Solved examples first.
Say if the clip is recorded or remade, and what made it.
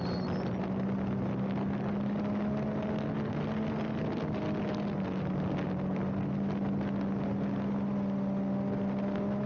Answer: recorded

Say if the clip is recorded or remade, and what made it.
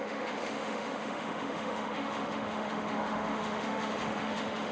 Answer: remade, autoencoder, DAC-VAE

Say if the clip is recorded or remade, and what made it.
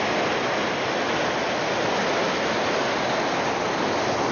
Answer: recorded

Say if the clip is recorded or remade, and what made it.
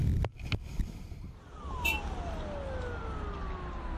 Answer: recorded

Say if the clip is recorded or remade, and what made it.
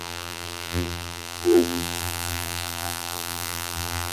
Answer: remade, vocoder, BigVGAN v2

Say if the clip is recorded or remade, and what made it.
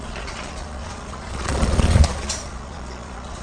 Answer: remade, vocoder, Vocos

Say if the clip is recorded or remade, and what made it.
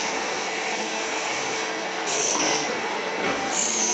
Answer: remade, codec, SNAC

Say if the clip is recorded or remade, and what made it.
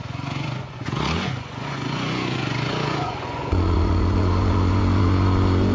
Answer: remade, vocoder, Vocos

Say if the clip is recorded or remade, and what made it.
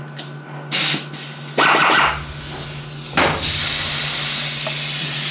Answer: recorded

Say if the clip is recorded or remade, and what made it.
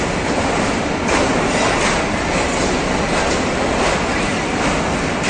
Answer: recorded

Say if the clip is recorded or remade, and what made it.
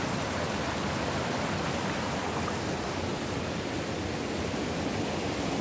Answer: recorded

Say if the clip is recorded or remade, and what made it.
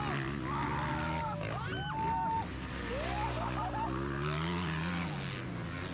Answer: recorded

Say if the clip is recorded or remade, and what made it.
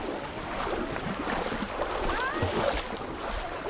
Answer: recorded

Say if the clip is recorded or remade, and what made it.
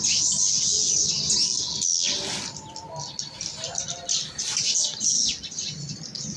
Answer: recorded